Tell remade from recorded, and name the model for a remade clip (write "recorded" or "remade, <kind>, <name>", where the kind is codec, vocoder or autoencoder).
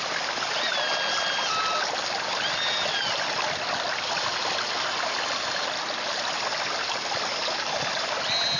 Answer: recorded